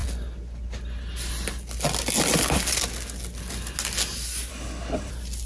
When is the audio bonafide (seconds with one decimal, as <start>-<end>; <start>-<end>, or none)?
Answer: 0.0-4.5; 5.1-5.5